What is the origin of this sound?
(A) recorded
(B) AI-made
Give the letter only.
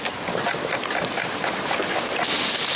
A